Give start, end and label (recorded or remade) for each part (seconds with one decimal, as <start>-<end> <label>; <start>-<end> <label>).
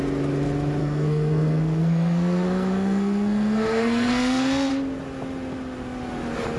0.0-0.8 recorded; 0.8-4.7 remade; 4.7-6.6 recorded